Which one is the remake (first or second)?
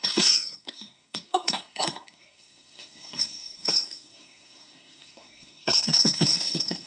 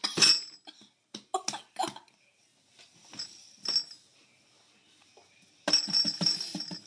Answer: first